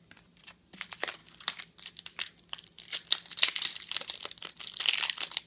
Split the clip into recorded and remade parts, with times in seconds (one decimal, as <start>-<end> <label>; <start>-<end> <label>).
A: 0.0-5.5 recorded

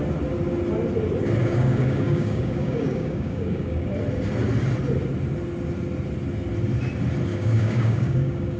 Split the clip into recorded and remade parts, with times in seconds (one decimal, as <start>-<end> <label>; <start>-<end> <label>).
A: 0.0-1.4 recorded; 1.4-3.9 remade; 3.9-7.3 recorded; 7.3-8.6 remade

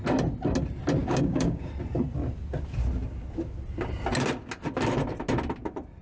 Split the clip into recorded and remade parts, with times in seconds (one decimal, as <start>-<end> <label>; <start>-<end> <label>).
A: 0.0-1.0 recorded; 1.0-1.7 remade; 1.7-6.0 recorded

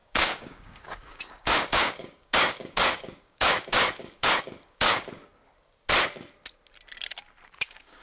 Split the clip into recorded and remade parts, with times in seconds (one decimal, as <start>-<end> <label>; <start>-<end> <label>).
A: 0.0-5.2 remade; 5.2-7.6 recorded; 7.6-8.0 remade

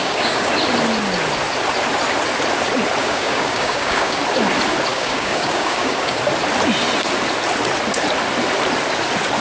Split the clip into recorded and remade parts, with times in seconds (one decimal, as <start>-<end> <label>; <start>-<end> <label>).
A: 0.0-0.5 remade; 0.5-3.0 recorded; 3.0-4.2 remade; 4.2-4.9 recorded; 4.9-6.2 remade; 6.2-9.4 recorded

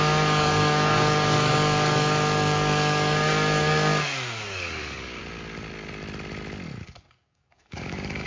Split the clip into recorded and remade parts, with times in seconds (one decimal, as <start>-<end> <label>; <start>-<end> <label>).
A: 0.0-5.2 remade; 5.2-6.8 recorded; 6.8-8.3 remade

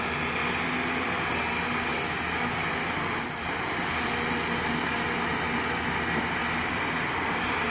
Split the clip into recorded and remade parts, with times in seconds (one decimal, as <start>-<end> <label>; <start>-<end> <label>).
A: 0.0-1.9 recorded; 1.9-2.6 remade; 2.6-7.7 recorded